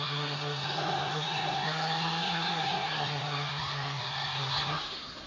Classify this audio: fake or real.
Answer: fake